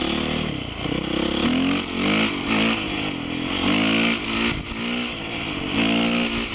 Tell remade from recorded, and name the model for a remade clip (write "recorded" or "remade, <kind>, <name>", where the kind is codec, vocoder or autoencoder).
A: recorded